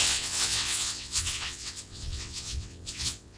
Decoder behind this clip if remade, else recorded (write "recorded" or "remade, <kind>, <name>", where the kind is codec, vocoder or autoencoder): remade, vocoder, WaveNeXt